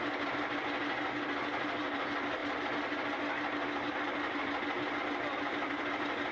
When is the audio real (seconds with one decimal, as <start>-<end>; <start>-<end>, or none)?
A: 0.0-6.3